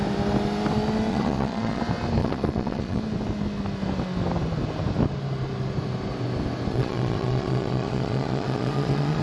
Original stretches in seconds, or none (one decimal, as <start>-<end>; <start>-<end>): 0.0-1.1; 1.8-2.2; 3.0-6.7